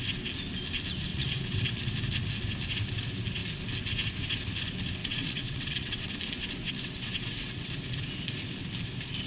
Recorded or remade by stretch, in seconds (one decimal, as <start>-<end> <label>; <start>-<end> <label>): 0.0-1.1 recorded; 1.1-1.9 remade; 1.9-5.0 recorded; 5.0-6.1 remade; 6.1-6.6 recorded; 6.6-7.7 remade; 7.7-9.3 recorded